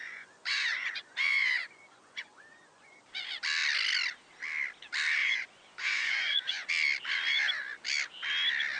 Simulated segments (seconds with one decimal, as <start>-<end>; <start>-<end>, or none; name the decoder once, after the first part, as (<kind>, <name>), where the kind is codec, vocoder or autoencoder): 0.0-3.0 (vocoder, Vocos); 5.2-6.7